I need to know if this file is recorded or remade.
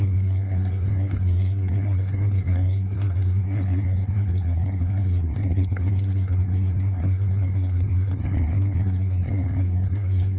remade